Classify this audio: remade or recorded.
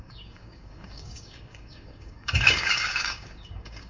remade